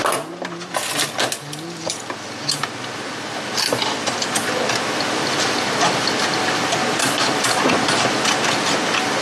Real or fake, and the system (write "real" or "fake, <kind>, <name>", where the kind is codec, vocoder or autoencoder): real